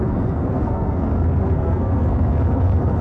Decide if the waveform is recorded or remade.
remade